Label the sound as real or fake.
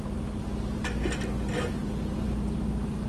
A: real